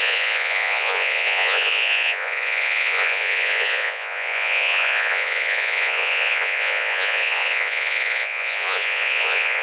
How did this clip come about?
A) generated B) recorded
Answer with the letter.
A